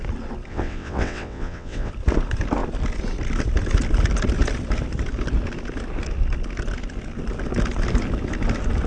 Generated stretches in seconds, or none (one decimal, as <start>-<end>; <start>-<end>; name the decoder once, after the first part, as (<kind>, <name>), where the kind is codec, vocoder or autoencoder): 0.5-1.9 (vocoder, WaveNeXt)